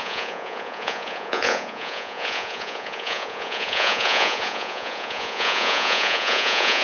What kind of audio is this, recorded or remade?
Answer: remade